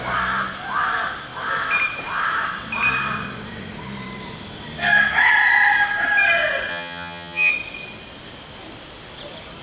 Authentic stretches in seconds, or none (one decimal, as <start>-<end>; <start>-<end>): 0.0-6.7; 7.5-9.6